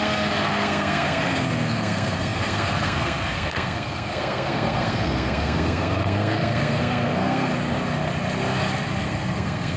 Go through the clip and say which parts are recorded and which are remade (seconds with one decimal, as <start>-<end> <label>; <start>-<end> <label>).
0.0-7.5 remade; 7.5-9.0 recorded; 9.0-9.8 remade